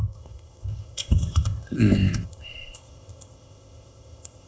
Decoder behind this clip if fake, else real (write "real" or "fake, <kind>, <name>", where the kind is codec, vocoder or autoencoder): fake, codec, ZipCodec